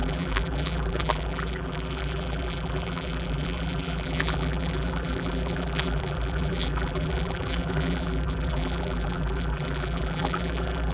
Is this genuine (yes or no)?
no